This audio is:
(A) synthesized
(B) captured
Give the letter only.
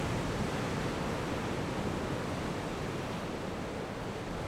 B